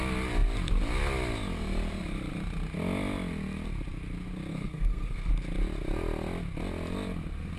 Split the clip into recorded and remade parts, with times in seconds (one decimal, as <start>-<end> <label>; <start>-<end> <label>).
0.0-4.5 recorded; 4.5-5.3 remade; 5.3-7.6 recorded